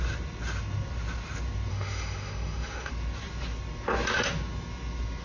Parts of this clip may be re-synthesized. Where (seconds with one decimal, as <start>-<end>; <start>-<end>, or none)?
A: 1.7-2.9